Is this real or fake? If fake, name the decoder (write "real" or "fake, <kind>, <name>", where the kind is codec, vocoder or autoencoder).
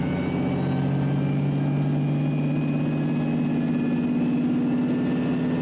real